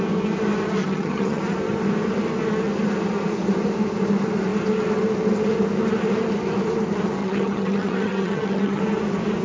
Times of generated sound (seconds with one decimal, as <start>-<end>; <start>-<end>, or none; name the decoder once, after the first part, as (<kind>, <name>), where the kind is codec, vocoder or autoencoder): 0.8-1.4 (vocoder, HiFi-GAN); 7.2-8.8